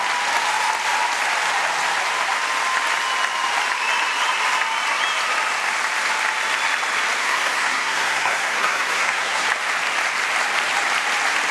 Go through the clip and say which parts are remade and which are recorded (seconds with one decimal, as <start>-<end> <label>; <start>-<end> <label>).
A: 0.0-7.2 recorded; 7.2-9.5 remade; 9.5-11.5 recorded

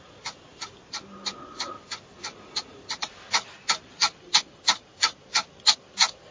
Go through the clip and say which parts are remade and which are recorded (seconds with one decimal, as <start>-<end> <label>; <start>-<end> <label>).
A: 0.0-6.3 recorded

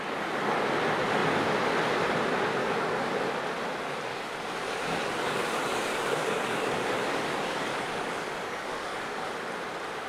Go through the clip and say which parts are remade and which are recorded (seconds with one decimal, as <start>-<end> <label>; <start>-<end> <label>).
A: 0.0-2.6 recorded; 2.6-3.1 remade; 3.1-4.1 recorded; 4.1-9.3 remade; 9.3-10.1 recorded

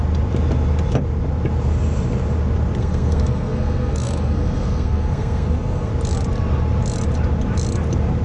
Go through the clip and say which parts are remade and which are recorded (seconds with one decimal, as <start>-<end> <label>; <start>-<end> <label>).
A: 0.0-2.8 recorded; 2.8-5.9 remade; 5.9-8.2 recorded